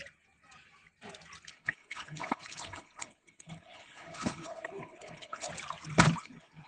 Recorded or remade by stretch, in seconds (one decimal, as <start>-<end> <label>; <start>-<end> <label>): 0.0-1.5 recorded; 1.5-5.5 remade; 5.5-6.2 recorded; 6.2-6.7 remade